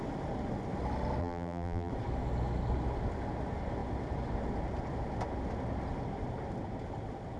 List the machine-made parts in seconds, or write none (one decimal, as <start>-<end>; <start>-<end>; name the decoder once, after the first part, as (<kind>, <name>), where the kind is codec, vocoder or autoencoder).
1.2-1.9 (vocoder, BigVGAN v2)